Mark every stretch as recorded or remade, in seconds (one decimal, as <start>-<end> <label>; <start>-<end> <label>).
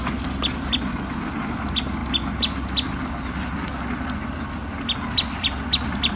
0.0-0.5 remade; 0.5-6.2 recorded